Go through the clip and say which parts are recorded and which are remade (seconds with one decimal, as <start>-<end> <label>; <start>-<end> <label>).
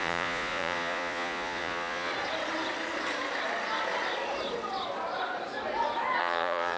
0.0-2.1 remade; 2.1-6.2 recorded; 6.2-6.8 remade